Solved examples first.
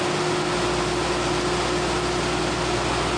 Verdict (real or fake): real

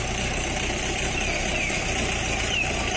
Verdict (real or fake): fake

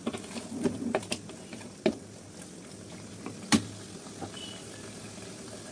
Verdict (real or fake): fake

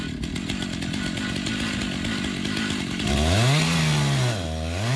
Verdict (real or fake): real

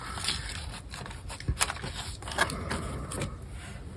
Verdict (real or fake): real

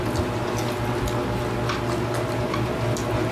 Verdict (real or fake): real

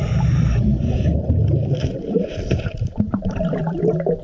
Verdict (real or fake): fake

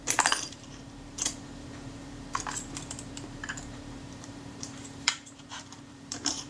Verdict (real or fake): fake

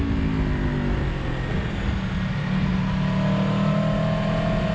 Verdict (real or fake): real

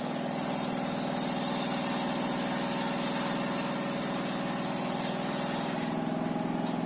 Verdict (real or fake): real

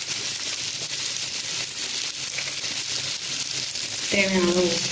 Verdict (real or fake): real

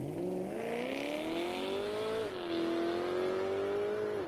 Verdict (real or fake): real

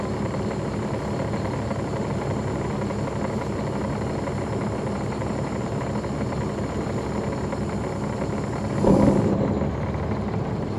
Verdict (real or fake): real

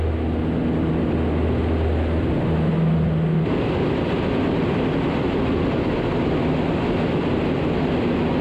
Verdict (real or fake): real